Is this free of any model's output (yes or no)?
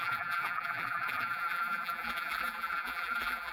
no